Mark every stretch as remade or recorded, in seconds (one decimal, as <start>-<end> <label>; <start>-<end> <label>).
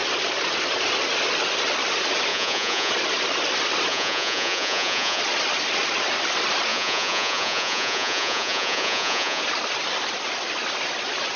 0.0-2.3 recorded; 2.3-2.9 remade; 2.9-3.9 recorded; 3.9-5.2 remade; 5.2-6.7 recorded; 6.7-9.4 remade; 9.4-11.4 recorded